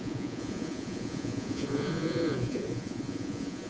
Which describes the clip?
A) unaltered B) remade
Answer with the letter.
B